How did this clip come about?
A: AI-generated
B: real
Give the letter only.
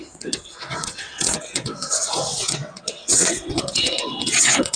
A